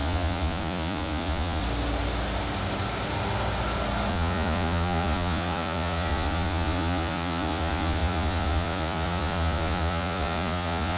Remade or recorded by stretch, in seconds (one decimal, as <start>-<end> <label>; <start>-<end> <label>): 0.0-1.6 remade; 1.6-4.1 recorded; 4.1-11.0 remade